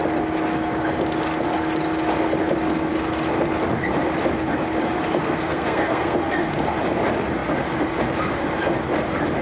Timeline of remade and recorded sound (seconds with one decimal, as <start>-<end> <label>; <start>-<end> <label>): 0.0-5.2 recorded; 5.2-6.5 remade; 6.5-9.4 recorded